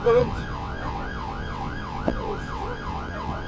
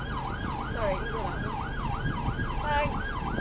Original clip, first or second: second